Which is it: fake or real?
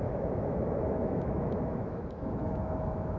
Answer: fake